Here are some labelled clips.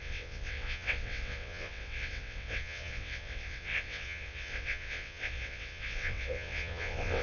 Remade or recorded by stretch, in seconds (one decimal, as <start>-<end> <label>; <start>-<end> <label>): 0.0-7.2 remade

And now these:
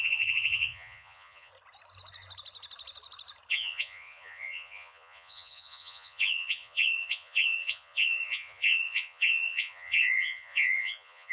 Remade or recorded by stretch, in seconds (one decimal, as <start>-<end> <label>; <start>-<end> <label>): 0.0-1.5 remade; 1.5-3.5 recorded; 3.5-11.3 remade

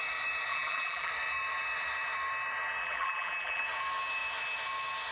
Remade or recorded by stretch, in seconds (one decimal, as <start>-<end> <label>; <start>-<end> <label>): 0.0-0.5 recorded; 0.5-1.1 remade; 1.1-2.8 recorded; 2.8-3.6 remade; 3.6-5.1 recorded

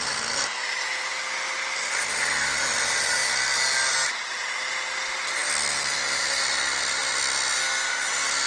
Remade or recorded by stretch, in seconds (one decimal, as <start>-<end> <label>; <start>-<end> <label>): 0.0-8.5 recorded

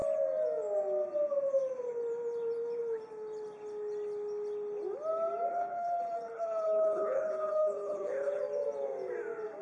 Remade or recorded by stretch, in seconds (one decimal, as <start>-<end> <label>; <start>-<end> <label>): 0.0-5.5 recorded; 5.5-8.4 remade; 8.4-9.6 recorded